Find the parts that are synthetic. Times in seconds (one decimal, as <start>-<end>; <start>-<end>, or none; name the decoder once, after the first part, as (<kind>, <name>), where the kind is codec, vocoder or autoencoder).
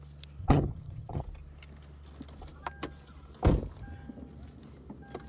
0.4-1.2 (vocoder, HiFi-GAN)